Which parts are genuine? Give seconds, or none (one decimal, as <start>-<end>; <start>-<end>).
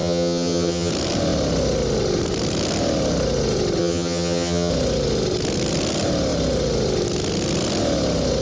0.9-3.8; 4.7-8.4